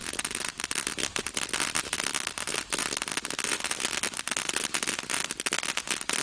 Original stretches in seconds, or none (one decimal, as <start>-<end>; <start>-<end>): 0.0-6.2